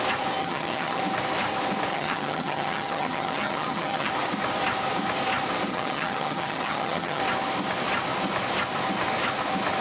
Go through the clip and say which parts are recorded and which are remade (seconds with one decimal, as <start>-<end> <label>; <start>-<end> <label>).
0.0-0.4 recorded; 0.4-1.0 remade; 1.0-1.9 recorded; 1.9-4.1 remade; 4.1-5.7 recorded; 5.7-7.2 remade; 7.2-9.8 recorded